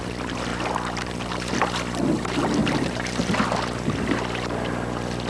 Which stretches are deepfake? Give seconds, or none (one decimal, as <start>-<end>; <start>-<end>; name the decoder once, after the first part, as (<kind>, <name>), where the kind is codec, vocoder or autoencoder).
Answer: 0.5-1.5 (vocoder, BigVGAN v2); 2.6-3.2